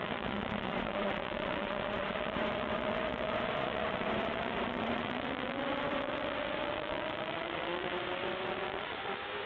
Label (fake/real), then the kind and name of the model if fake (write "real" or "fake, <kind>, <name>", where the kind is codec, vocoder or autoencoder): fake, vocoder, Vocos